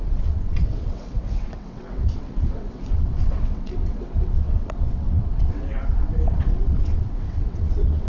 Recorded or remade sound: remade